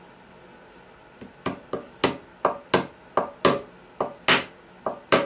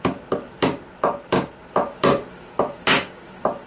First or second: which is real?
first